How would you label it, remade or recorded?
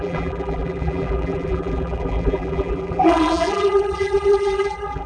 remade